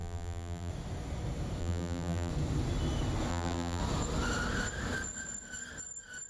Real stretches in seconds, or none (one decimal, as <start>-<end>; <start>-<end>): 0.7-1.6; 2.3-3.3; 3.8-6.3